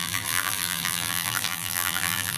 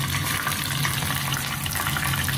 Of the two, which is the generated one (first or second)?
first